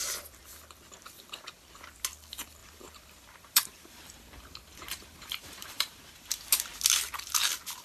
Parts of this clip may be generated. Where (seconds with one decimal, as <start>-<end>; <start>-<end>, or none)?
2.6-6.4